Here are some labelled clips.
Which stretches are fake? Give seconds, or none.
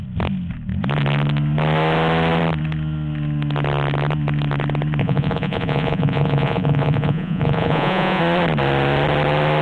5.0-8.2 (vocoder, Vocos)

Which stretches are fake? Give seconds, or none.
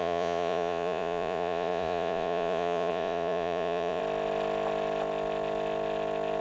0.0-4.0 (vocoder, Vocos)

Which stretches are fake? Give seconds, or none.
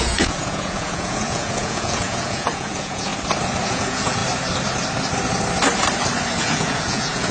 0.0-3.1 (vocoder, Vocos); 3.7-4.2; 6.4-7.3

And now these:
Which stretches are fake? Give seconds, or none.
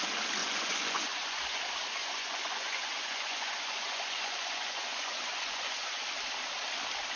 0.4-1.6 (vocoder, Vocos); 2.0-6.0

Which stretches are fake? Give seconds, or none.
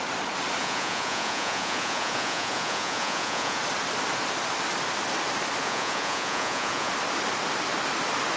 0.6-3.6 (vocoder, Vocos); 5.6-6.9